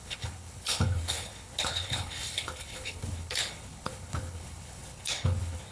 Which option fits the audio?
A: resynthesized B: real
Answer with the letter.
A